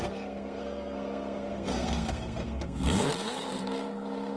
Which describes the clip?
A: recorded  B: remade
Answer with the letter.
B